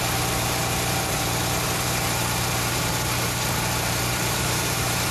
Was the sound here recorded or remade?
remade